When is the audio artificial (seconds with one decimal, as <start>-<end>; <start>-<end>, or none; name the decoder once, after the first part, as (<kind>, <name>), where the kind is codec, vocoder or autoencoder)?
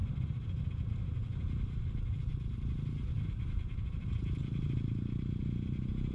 none